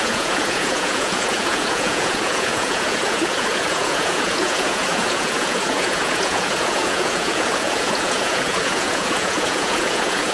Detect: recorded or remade remade